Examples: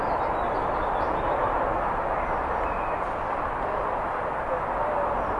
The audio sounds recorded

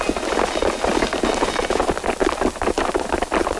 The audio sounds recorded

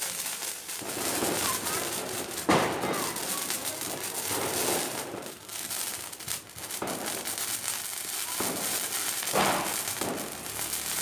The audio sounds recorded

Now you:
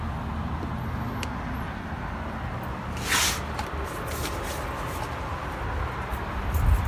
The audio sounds recorded